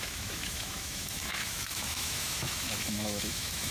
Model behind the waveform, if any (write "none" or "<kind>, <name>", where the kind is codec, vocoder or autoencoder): autoencoder, DAC-VAE